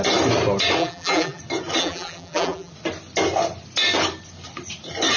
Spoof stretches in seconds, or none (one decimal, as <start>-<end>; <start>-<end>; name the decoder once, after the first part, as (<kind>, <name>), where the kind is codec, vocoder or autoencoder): 0.8-1.4 (vocoder, BigVGAN v2); 1.8-2.7

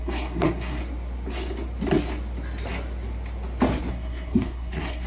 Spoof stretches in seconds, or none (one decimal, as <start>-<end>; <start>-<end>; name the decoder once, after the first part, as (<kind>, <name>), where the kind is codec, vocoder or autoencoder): 0.0-0.8 (codec, SNAC); 3.9-5.1

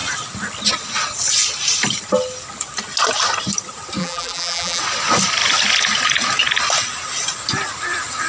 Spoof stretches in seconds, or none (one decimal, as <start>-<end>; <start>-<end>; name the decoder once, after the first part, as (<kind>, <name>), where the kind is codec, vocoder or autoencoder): 4.0-4.8 (vocoder, BigVGAN v2)

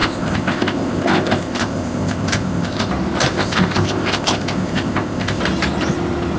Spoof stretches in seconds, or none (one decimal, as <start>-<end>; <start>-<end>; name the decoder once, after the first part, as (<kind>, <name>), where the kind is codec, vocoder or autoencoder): 0.0-2.9 (codec, ZipCodec); 3.3-5.4